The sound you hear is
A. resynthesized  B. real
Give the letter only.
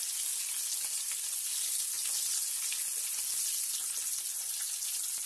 B